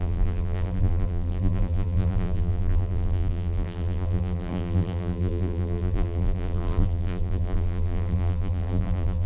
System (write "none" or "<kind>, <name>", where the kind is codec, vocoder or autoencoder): vocoder, BigVGAN v2